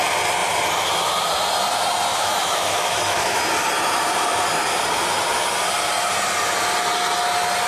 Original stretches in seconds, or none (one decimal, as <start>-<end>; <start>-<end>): 0.0-2.1; 3.4-7.7